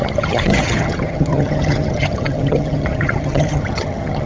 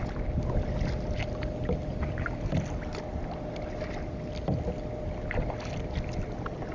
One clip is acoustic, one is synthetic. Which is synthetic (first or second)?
first